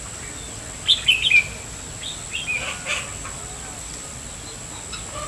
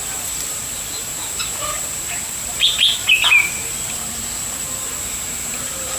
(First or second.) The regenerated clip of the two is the second